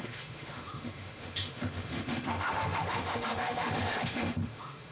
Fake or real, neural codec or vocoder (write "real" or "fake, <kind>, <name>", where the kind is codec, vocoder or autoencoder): fake, autoencoder, DAC-VAE